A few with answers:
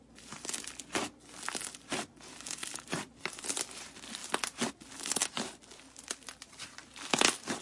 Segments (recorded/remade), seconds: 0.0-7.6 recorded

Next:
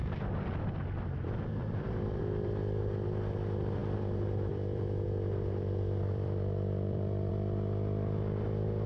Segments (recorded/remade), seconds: 0.0-0.6 remade; 0.6-1.6 recorded; 1.6-2.2 remade; 2.2-3.8 recorded; 3.8-7.3 remade; 7.3-8.9 recorded

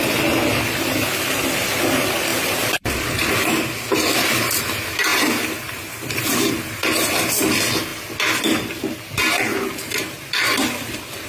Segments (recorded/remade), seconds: 0.0-2.3 recorded; 2.3-2.9 remade; 2.9-3.9 recorded; 3.9-4.6 remade; 4.6-5.1 recorded; 5.1-6.5 remade; 6.5-11.3 recorded

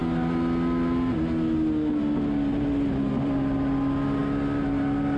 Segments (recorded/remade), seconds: 0.0-5.2 recorded

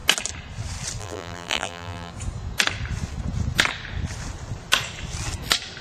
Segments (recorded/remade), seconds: 0.0-1.0 recorded; 1.0-2.1 remade; 2.1-5.8 recorded

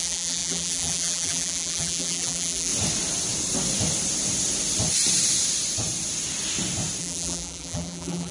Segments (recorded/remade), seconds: 0.0-2.7 remade; 2.7-7.0 recorded; 7.0-8.3 remade

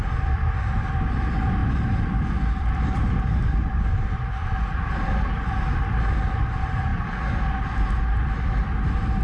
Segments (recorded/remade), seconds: 0.0-1.6 recorded; 1.6-3.0 remade; 3.0-9.2 recorded